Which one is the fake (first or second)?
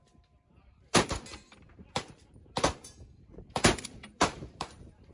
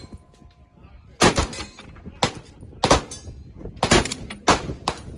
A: first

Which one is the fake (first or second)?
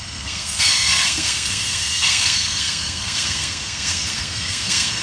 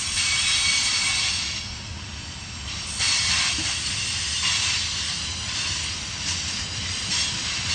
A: first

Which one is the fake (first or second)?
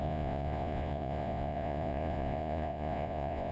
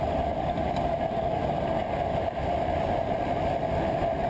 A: first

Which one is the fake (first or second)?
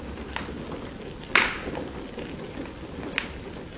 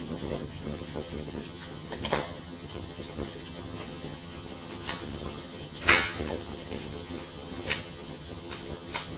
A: second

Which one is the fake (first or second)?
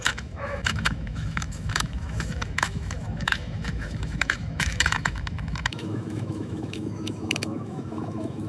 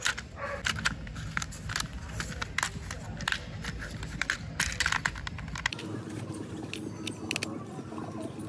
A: first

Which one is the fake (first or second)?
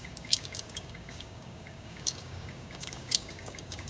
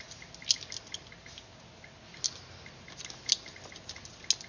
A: first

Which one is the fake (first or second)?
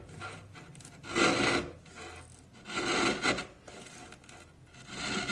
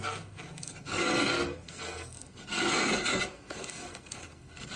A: second